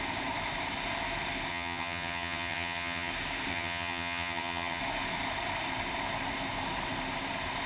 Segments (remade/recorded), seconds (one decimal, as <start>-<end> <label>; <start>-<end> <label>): 0.0-1.5 recorded; 1.5-3.1 remade; 3.1-3.5 recorded; 3.5-4.8 remade; 4.8-7.7 recorded